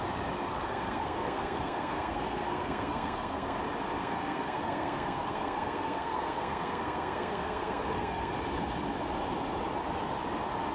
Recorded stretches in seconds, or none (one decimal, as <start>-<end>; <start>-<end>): 0.0-0.5; 3.6-4.0; 8.3-10.7